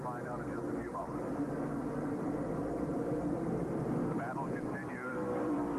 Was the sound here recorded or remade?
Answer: remade